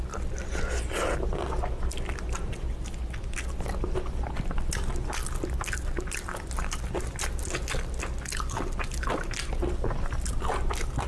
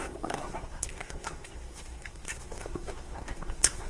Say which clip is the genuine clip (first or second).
first